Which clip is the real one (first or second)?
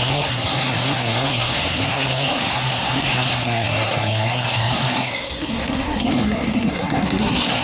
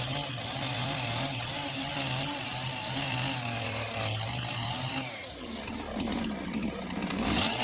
second